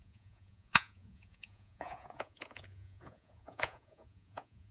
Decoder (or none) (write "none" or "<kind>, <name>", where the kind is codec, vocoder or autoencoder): vocoder, Vocos